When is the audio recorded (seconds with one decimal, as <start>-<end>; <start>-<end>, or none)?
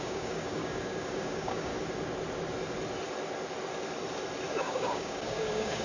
1.7-4.5